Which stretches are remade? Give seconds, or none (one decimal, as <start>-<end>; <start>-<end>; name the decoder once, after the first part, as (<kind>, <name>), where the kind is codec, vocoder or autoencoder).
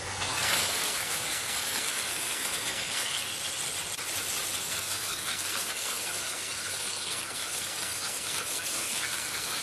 0.0-3.3 (codec, SNAC); 4.6-9.6